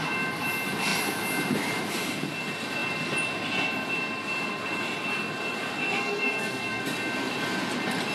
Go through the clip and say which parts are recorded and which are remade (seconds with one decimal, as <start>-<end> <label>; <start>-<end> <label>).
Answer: 0.0-5.8 recorded; 5.8-6.8 remade; 6.8-8.1 recorded